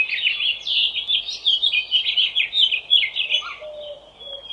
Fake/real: real